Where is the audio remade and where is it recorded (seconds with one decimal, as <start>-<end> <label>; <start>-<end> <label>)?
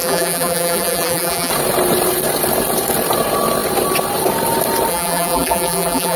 0.0-1.5 remade; 1.5-4.9 recorded; 4.9-6.2 remade